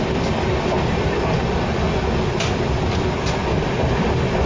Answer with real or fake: real